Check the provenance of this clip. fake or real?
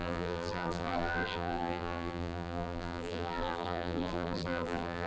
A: fake